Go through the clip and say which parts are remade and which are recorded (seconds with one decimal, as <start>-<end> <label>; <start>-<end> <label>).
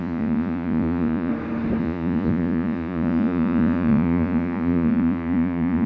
0.0-1.3 remade; 1.3-1.8 recorded; 1.8-5.9 remade